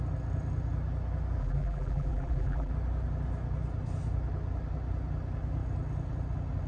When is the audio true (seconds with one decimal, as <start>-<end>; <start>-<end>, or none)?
0.0-1.4; 2.7-6.7